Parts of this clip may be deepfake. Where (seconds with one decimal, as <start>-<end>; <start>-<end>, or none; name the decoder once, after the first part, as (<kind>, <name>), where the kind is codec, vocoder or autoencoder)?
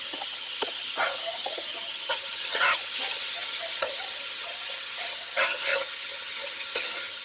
0.0-7.2 (vocoder, HiFi-GAN)